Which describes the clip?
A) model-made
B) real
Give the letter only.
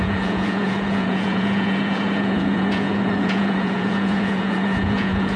A